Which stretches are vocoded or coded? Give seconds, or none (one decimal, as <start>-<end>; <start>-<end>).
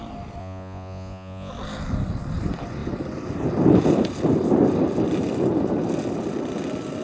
0.4-1.5